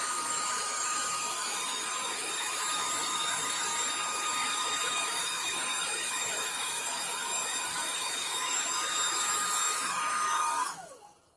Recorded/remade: remade